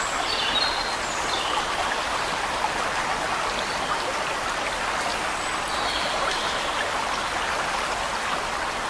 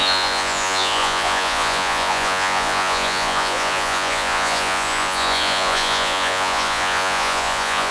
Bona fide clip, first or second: first